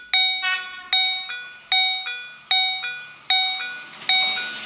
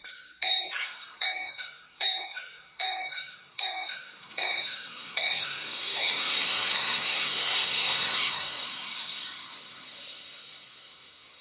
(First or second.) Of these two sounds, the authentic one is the first